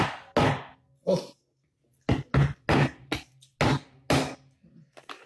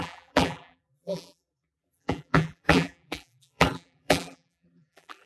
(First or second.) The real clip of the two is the first